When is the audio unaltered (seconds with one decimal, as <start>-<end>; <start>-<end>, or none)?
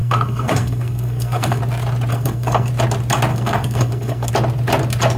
1.6-2.1; 2.7-3.3; 4.3-5.2